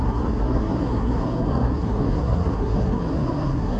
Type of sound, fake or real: fake